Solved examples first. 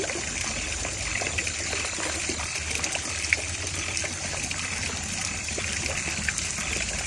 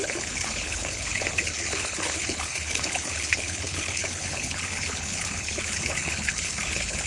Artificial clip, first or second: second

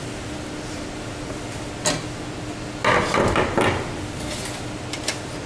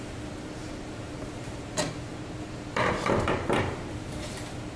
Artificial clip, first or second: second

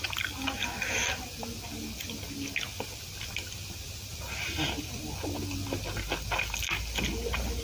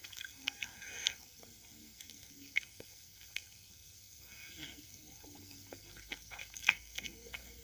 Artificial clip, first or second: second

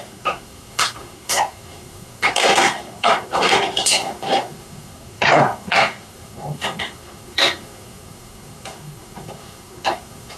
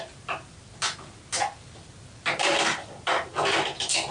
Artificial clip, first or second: first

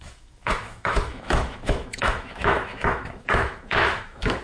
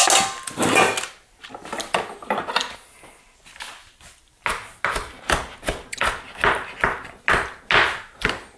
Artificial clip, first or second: first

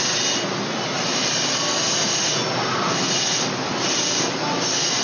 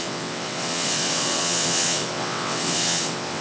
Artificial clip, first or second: second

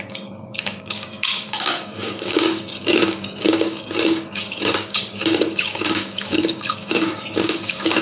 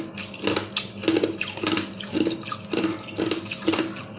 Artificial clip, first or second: first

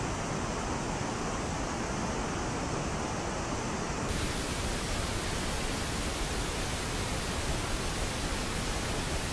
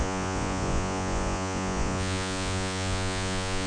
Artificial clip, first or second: second